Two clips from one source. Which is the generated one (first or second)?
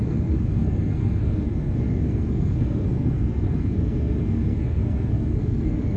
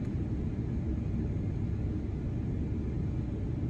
first